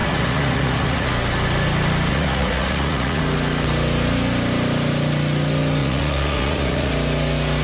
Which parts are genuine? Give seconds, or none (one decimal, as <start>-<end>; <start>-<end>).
1.1-2.1; 3.2-5.8; 6.9-7.6